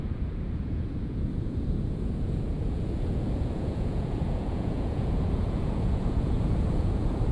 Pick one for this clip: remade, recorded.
remade